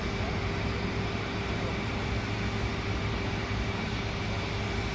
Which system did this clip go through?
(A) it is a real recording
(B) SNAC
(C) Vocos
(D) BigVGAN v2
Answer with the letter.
A